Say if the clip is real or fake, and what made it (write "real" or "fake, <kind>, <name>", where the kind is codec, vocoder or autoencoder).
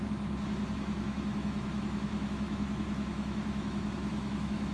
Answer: fake, autoencoder, DAC-VAE